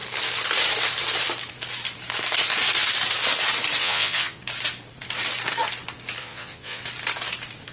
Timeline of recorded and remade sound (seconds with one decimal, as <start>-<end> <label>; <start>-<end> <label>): 0.0-3.8 recorded; 3.8-4.4 remade; 4.4-6.2 recorded; 6.2-6.8 remade; 6.8-7.7 recorded